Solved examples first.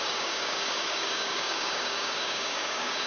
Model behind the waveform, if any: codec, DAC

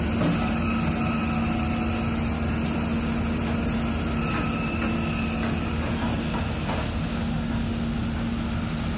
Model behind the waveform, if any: none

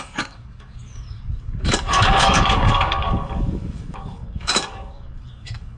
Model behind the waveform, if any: codec, DAC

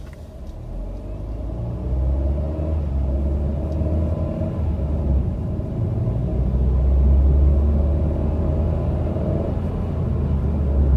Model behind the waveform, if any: none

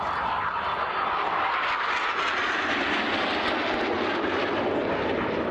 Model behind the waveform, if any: none